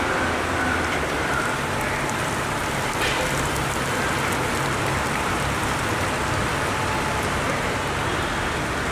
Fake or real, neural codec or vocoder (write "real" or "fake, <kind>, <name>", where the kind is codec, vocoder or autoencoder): fake, vocoder, BigVGAN v2